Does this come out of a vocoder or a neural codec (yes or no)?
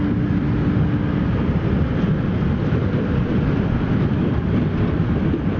no